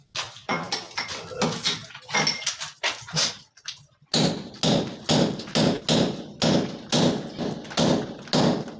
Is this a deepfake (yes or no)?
no